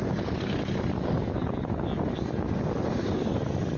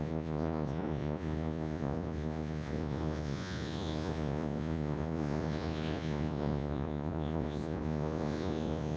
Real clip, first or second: first